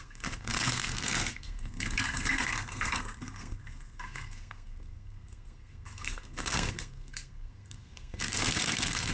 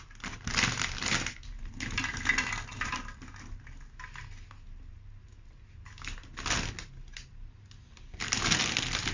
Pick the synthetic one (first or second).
first